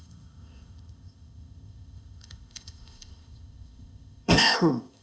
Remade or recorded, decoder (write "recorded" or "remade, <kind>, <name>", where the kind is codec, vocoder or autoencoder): remade, codec, ZipCodec